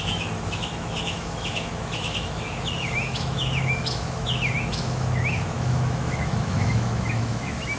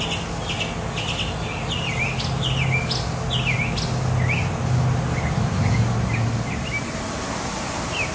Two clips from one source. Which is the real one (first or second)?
second